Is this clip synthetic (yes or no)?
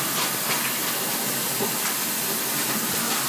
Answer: no